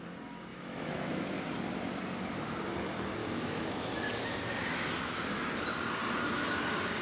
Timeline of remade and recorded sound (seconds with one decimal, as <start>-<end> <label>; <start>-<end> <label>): 0.0-0.5 recorded; 0.5-1.4 remade; 1.4-3.2 recorded; 3.2-3.9 remade; 3.9-7.0 recorded